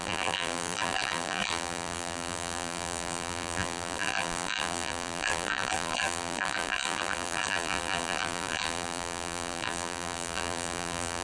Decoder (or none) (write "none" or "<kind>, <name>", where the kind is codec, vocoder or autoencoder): vocoder, BigVGAN v2